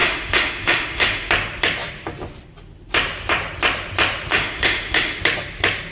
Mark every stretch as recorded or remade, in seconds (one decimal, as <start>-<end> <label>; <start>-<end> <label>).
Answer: 0.0-1.3 remade; 1.3-4.3 recorded; 4.3-5.2 remade; 5.2-5.9 recorded

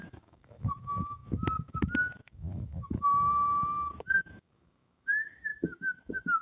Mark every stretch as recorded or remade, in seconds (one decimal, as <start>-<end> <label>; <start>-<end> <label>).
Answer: 0.0-6.4 remade

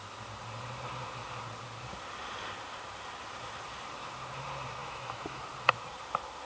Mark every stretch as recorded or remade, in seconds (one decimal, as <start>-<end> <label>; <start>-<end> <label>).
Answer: 0.0-4.8 recorded; 4.8-5.4 remade; 5.4-6.4 recorded

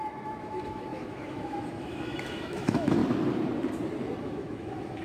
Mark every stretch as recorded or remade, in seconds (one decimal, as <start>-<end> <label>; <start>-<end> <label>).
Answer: 0.0-3.0 remade; 3.0-4.2 recorded; 4.2-5.0 remade

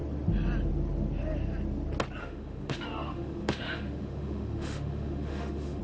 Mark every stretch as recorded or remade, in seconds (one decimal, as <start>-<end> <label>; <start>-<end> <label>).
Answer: 0.0-2.2 recorded; 2.2-5.8 remade

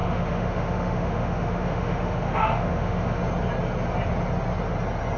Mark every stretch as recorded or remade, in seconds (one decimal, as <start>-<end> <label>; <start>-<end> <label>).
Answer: 0.0-3.2 remade; 3.2-5.2 recorded

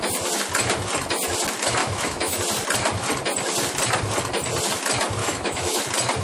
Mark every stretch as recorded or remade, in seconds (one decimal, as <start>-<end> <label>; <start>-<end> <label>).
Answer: 0.0-1.8 recorded; 1.8-2.4 remade; 2.4-5.2 recorded; 5.2-5.8 remade; 5.8-6.2 recorded